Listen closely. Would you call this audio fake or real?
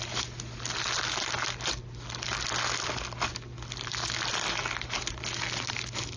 real